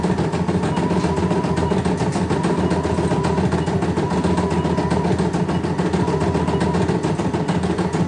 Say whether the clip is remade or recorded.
recorded